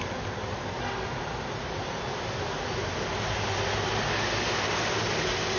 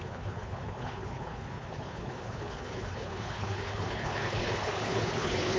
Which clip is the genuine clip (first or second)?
first